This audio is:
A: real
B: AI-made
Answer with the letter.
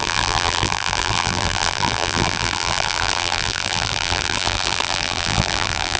B